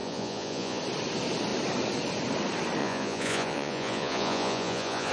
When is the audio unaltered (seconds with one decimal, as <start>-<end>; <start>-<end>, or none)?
0.8-2.8